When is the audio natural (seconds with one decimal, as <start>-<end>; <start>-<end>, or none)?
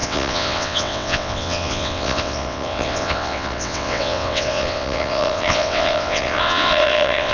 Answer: none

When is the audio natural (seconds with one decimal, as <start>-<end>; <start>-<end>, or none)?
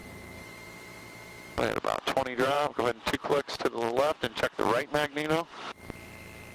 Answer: 2.8-6.5